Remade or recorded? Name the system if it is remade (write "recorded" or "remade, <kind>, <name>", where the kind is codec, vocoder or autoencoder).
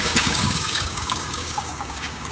remade, codec, DAC